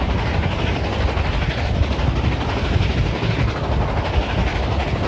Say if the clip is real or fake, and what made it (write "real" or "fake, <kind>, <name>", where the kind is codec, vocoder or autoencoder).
real